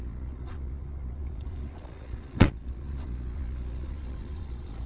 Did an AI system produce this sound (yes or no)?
yes